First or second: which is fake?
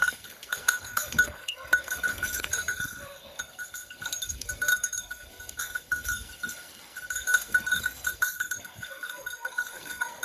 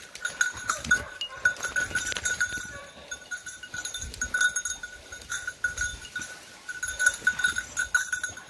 first